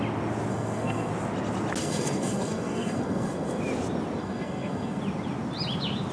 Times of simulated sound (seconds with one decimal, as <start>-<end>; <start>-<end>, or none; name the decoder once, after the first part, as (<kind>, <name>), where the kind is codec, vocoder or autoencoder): 0.5-1.1 (codec, SNAC); 1.8-3.6; 4.2-5.0